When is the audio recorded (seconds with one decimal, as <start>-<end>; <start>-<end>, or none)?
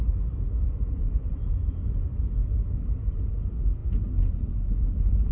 0.0-1.0; 1.9-2.4; 3.4-5.3